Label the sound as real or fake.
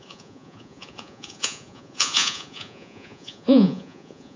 fake